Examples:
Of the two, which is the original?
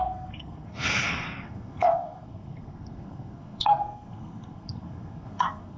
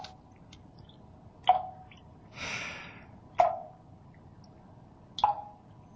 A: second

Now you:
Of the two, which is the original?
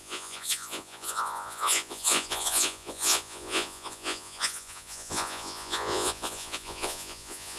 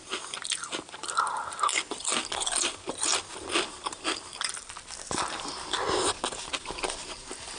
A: second